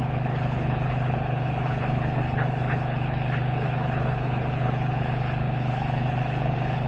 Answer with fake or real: fake